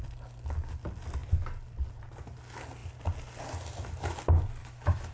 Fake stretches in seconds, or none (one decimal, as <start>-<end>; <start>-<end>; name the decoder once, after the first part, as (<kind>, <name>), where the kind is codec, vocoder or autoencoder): 4.6-5.1 (autoencoder, DAC-VAE)